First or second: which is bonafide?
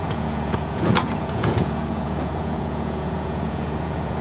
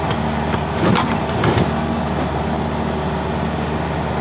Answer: second